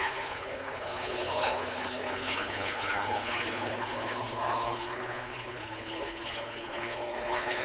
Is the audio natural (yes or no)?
no